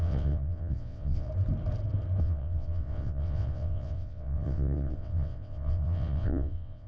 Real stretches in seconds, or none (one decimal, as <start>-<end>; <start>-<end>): 1.3-2.2